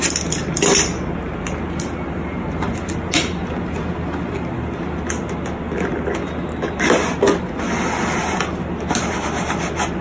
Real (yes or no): yes